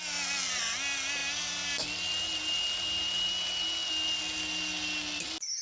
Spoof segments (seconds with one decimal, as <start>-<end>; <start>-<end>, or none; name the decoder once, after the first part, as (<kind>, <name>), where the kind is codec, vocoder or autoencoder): none

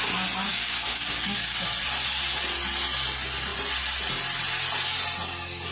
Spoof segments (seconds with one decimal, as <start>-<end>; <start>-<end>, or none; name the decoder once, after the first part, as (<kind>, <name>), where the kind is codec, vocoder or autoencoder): 0.5-1.6 (codec, DAC)